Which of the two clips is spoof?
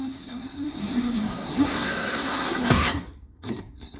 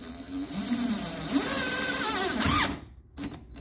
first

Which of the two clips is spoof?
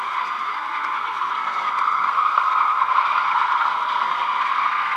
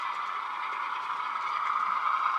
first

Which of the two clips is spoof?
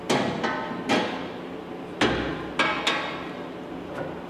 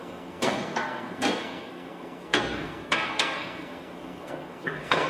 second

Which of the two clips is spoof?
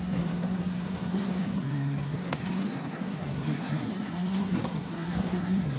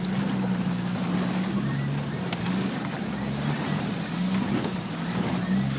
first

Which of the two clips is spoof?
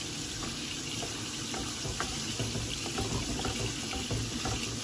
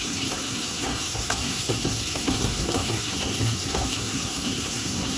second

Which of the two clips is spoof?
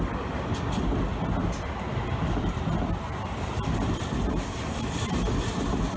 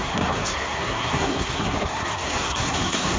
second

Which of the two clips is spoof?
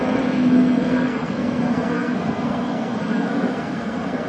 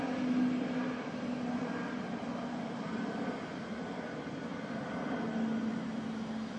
first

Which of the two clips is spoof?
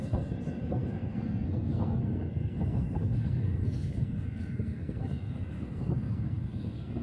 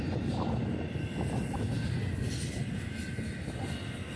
first